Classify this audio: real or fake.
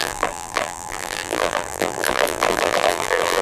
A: fake